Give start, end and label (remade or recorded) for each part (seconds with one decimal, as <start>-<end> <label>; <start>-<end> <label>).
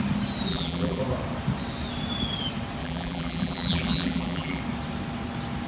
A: 0.0-0.5 recorded; 0.5-1.0 remade; 1.0-2.8 recorded; 2.8-4.6 remade; 4.6-5.7 recorded